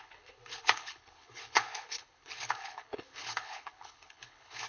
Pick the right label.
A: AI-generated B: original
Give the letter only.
A